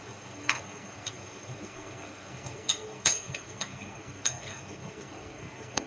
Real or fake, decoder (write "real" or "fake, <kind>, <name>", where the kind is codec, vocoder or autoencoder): fake, codec, SNAC